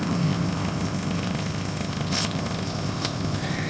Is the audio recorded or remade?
remade